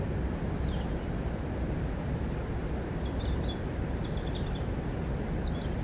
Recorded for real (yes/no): yes